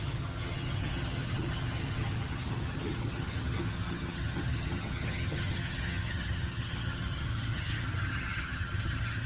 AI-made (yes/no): yes